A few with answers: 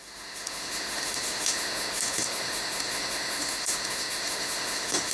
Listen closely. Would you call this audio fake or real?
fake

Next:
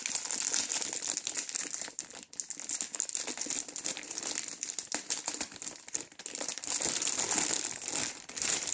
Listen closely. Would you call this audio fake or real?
fake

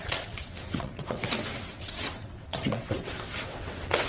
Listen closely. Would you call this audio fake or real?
fake